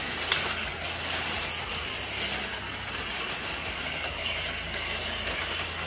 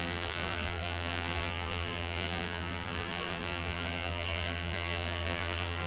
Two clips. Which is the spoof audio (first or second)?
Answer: second